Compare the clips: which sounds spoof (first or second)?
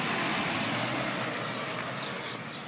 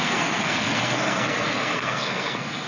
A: second